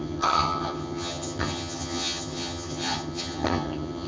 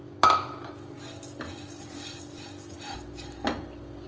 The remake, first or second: first